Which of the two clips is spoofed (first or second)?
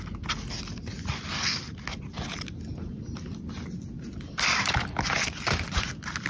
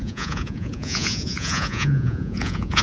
second